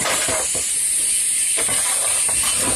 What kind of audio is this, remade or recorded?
recorded